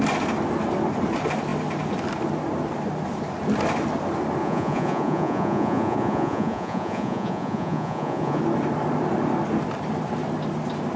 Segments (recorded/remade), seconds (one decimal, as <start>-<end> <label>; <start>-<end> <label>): 0.0-4.4 recorded; 4.4-8.4 remade; 8.4-11.0 recorded